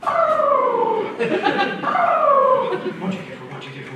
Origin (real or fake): real